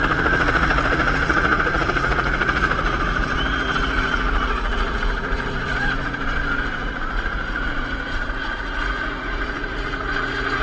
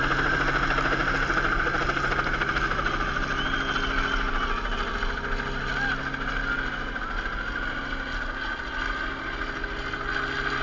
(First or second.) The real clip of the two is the second